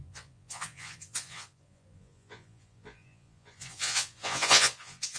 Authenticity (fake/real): fake